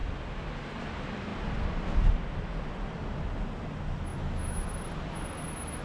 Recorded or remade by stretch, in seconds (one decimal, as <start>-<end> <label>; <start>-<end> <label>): 0.0-5.8 recorded